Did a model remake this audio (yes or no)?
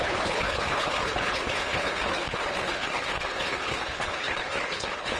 yes